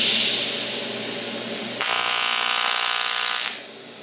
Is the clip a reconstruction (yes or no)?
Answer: no